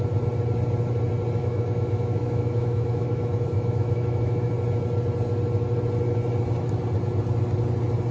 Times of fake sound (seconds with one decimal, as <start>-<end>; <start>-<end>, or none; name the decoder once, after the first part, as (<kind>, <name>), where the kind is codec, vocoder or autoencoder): 1.4-4.5 (autoencoder, DAC-VAE)